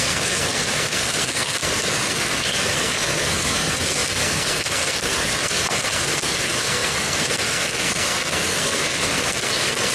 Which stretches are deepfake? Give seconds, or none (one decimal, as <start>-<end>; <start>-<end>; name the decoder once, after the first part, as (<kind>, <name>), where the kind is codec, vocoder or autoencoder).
0.0-9.9 (codec, SNAC)